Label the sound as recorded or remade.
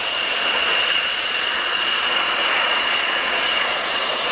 remade